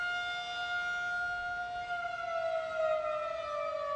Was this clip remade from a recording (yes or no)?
no